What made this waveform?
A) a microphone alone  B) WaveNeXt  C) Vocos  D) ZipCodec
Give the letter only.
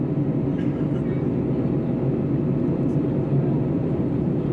A